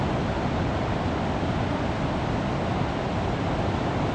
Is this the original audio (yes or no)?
yes